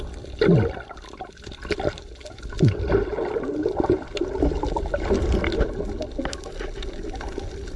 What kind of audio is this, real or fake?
real